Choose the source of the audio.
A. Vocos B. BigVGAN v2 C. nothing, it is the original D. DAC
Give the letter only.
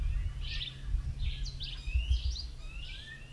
C